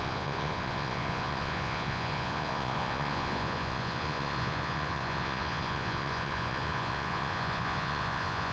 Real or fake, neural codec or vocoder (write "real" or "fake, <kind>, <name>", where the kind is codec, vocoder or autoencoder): fake, vocoder, Vocos